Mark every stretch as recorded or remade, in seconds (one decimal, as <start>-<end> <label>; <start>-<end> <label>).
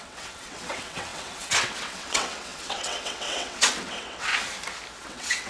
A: 0.0-4.3 remade; 4.3-5.0 recorded; 5.0-5.5 remade